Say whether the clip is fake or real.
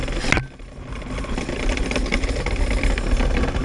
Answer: real